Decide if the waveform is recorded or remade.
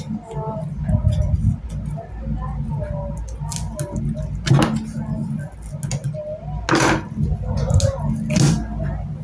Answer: recorded